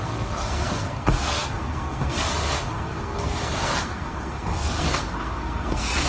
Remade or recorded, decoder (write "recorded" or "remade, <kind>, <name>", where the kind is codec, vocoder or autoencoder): remade, codec, SNAC